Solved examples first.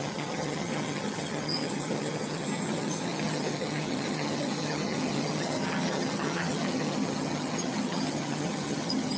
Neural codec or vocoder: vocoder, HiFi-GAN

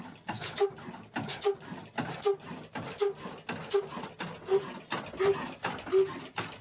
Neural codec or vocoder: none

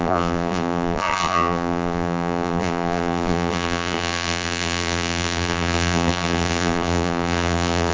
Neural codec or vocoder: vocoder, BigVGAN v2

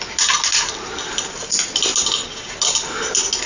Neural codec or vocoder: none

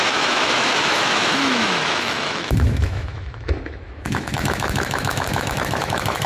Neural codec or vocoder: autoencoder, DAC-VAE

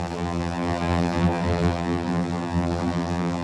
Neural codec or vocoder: vocoder, BigVGAN v2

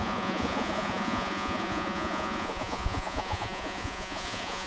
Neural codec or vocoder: vocoder, Vocos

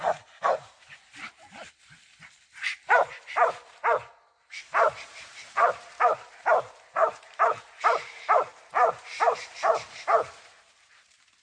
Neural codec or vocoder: vocoder, BigVGAN v2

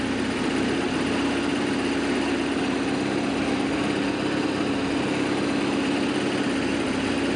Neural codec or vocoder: none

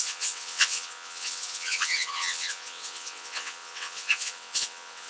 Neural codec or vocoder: vocoder, WaveNeXt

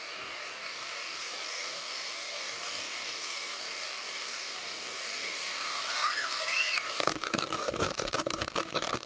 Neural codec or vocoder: codec, DAC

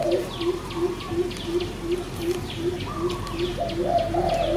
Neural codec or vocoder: none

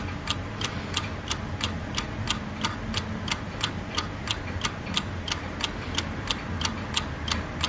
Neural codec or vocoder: none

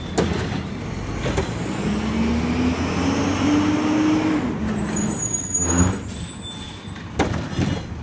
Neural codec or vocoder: none